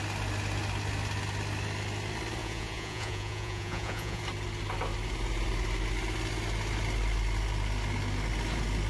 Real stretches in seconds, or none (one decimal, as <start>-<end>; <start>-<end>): 0.0-2.4; 4.2-8.9